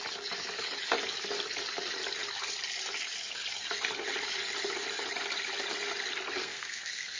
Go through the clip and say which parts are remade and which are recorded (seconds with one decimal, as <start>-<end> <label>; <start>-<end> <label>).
0.0-6.4 recorded; 6.4-7.2 remade